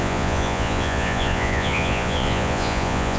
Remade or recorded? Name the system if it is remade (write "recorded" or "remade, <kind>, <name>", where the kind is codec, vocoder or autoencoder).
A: remade, vocoder, Vocos